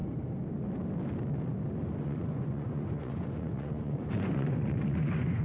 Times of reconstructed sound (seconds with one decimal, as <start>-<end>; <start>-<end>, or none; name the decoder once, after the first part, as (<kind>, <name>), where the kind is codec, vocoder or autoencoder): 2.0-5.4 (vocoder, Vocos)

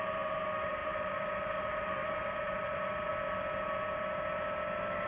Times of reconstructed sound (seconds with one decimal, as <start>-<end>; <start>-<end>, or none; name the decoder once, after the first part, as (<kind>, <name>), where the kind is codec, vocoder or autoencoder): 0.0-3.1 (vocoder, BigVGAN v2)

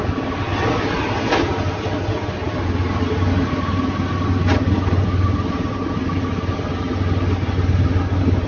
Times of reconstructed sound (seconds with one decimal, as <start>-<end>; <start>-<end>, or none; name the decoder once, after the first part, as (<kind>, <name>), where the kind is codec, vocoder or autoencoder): none

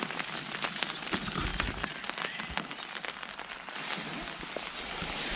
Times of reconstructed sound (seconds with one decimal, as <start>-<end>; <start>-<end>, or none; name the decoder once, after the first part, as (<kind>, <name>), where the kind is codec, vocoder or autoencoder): none